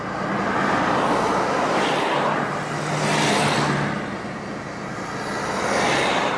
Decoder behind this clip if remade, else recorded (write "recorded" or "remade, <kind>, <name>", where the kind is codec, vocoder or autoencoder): recorded